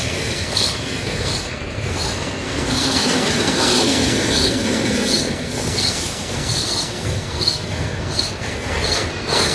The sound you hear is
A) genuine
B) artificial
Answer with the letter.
B